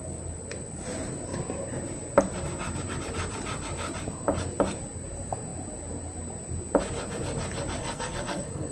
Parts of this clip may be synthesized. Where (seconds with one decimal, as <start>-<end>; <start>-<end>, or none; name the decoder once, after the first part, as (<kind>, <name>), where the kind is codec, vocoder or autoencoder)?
7.8-8.7 (codec, SNAC)